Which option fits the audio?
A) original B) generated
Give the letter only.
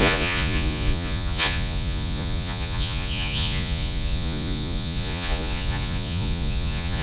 B